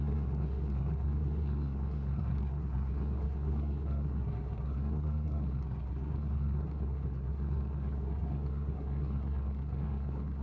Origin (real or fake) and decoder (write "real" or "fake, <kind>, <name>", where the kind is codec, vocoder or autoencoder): fake, codec, SNAC